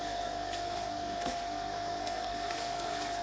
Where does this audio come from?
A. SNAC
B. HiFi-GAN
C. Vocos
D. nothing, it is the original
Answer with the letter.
A